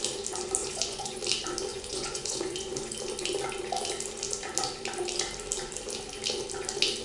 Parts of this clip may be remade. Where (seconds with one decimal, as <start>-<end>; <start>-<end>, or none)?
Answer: 0.6-1.2; 1.7-2.9